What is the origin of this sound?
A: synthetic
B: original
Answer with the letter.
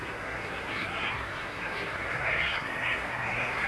A